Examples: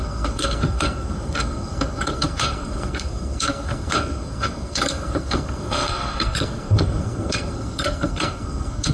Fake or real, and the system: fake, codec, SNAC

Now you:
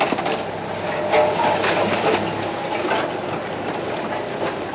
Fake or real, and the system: real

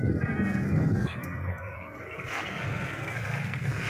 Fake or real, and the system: fake, codec, SNAC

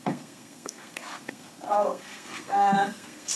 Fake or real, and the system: fake, codec, SNAC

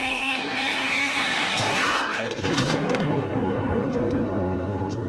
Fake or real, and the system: fake, codec, SNAC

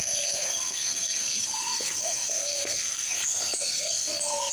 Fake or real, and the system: fake, codec, SNAC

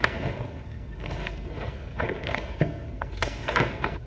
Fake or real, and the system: fake, codec, SNAC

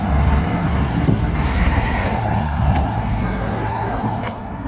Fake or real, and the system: fake, codec, SNAC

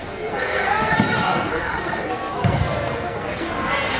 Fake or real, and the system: fake, codec, SNAC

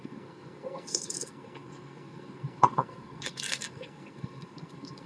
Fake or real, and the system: fake, codec, SNAC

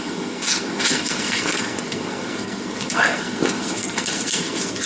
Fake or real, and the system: fake, codec, SNAC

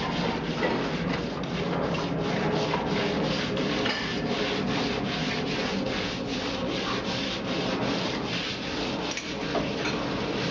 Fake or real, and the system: real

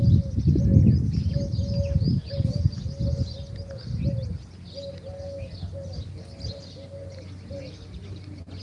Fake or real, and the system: real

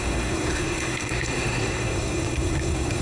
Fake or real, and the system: fake, codec, SNAC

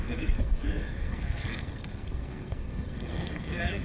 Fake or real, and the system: fake, codec, SNAC